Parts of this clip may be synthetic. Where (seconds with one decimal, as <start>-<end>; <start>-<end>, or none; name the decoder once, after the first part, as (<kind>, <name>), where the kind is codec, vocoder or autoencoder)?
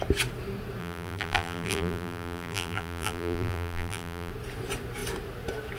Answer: 0.8-4.3 (vocoder, BigVGAN v2)